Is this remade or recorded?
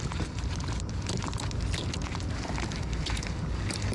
recorded